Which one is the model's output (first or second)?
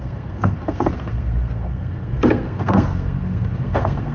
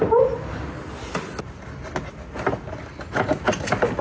first